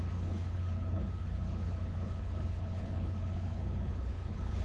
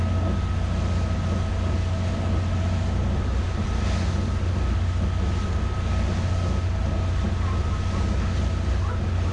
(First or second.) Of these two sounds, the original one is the second